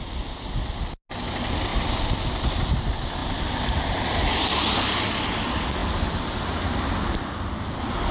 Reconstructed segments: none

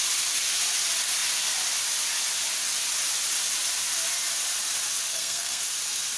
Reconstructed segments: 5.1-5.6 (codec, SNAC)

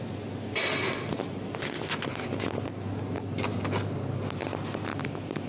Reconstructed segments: none

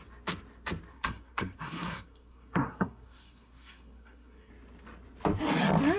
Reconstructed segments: 0.9-4.5 (codec, SNAC)